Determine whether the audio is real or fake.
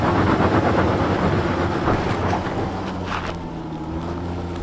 real